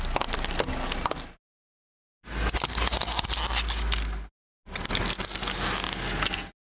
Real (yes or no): yes